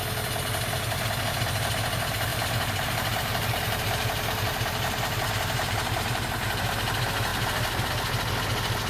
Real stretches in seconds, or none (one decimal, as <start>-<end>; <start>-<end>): 0.0-2.3; 6.3-7.3; 7.9-8.9